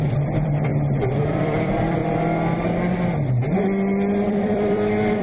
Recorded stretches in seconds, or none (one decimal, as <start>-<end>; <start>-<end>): 0.7-1.3; 2.0-4.3

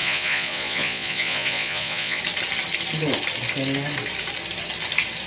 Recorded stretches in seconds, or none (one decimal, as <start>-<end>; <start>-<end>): 2.2-5.3

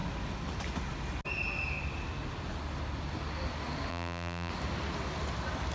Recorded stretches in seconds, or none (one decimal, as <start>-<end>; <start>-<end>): 0.0-3.9; 4.5-5.7

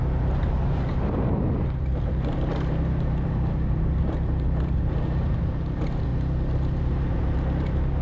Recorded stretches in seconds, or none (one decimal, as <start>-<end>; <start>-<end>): none

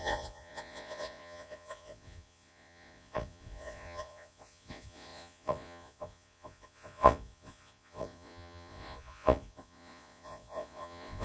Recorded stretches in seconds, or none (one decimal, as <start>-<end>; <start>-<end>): none